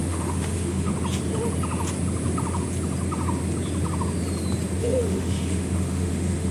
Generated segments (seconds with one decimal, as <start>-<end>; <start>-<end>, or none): 0.0-0.9; 4.8-6.5